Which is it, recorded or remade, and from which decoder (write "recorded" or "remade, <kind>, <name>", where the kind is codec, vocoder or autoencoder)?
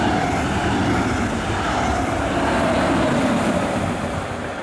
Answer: recorded